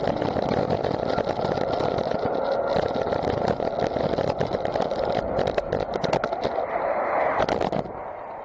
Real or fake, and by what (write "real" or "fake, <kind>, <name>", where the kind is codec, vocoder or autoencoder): real